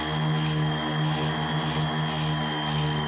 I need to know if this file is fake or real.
real